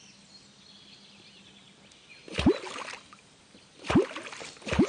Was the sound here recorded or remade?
recorded